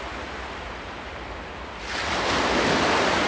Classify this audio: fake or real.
real